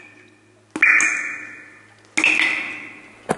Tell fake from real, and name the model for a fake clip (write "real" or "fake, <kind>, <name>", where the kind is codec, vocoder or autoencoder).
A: real